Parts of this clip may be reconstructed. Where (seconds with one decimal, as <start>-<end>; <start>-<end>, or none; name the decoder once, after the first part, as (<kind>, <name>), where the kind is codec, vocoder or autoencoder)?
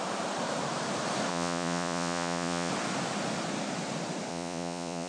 1.3-2.7 (vocoder, Vocos); 4.3-5.1